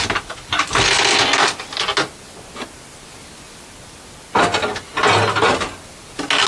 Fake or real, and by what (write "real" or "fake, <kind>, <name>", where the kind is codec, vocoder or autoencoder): real